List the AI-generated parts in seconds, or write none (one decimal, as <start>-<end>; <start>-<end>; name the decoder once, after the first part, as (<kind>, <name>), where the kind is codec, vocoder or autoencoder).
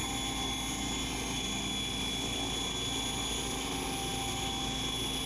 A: none